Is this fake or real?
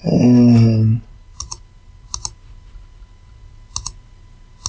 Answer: real